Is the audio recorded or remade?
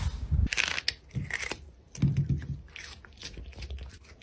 recorded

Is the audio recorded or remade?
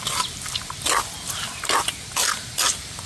recorded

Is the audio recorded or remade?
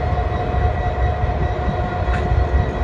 recorded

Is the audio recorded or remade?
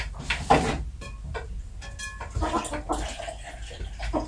recorded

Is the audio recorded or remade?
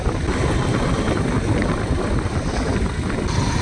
recorded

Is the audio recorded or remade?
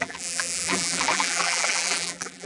remade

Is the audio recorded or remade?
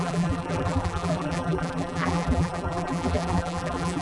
remade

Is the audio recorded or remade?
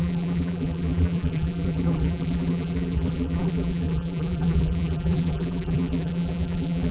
remade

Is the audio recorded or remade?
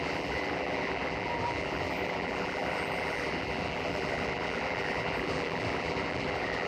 remade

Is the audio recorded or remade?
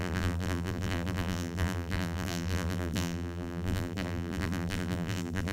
remade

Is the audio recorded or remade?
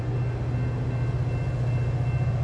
recorded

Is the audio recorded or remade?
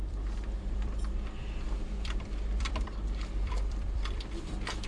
remade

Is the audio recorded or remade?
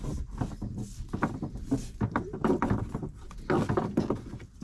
remade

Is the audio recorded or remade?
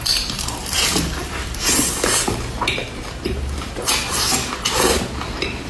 remade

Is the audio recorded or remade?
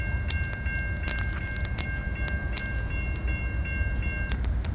recorded